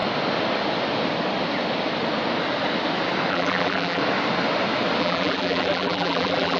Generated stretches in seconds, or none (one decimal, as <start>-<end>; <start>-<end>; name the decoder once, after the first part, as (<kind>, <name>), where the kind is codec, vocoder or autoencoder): 3.3-4.0 (vocoder, BigVGAN v2); 5.0-6.6